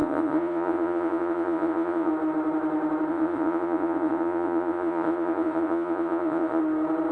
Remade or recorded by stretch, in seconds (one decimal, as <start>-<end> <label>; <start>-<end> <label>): 0.0-2.1 remade; 2.1-3.1 recorded; 3.1-6.6 remade; 6.6-7.1 recorded